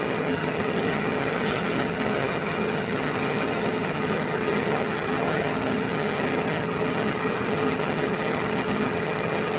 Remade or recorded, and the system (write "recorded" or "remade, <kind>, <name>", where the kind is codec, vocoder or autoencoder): remade, vocoder, HiFi-GAN